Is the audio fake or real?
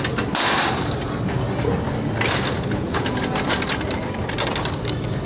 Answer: real